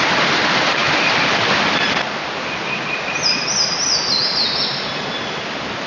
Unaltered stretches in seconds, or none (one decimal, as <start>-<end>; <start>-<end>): 0.0-5.9